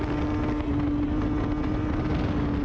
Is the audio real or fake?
real